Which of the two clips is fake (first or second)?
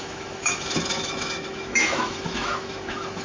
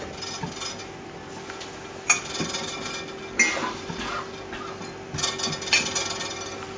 first